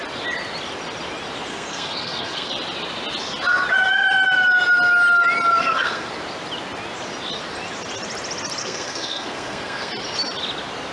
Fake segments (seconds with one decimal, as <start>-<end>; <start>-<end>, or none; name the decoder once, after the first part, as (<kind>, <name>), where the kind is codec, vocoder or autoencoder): 1.5-2.5 (codec, SNAC); 5.6-6.1; 8.6-9.9